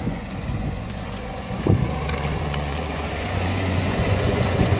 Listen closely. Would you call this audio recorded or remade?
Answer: remade